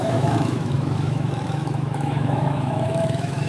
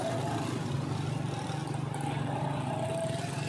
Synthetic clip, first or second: first